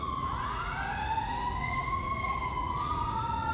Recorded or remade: remade